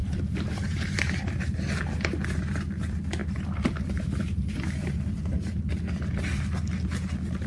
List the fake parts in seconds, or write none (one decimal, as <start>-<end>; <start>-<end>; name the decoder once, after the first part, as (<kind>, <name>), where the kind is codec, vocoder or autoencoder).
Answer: 0.0-1.4 (vocoder, BigVGAN v2); 3.2-5.6